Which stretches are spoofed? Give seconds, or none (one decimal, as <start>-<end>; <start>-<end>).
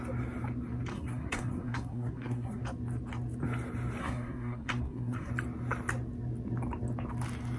0.9-2.6; 4.0-5.3